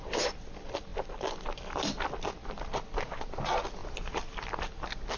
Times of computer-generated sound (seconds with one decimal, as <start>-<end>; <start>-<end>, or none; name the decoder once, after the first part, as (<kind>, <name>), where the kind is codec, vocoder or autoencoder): none